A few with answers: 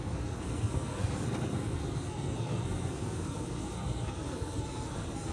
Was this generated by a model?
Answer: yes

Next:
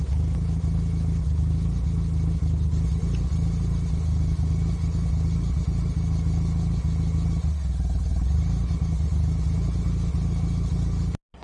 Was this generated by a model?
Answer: no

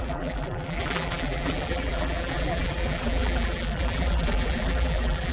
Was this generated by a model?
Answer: yes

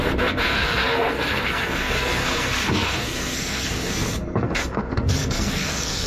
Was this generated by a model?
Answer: yes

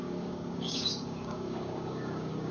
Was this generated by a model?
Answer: yes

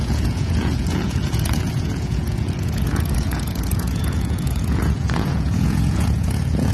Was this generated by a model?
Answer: yes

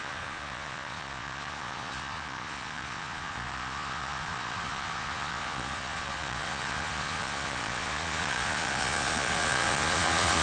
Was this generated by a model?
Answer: yes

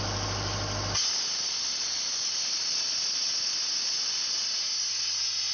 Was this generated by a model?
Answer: no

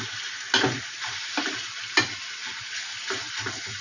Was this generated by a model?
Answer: no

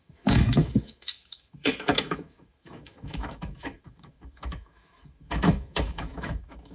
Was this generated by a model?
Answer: yes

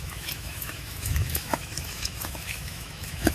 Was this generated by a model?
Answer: yes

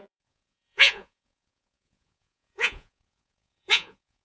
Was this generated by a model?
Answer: yes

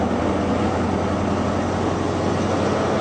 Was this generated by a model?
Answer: no